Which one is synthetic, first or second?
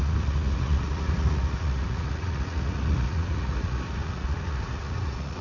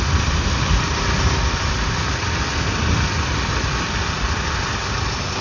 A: first